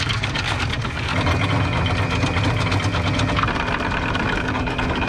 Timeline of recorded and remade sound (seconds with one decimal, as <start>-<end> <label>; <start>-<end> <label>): 0.0-1.1 remade; 1.1-4.2 recorded; 4.2-5.1 remade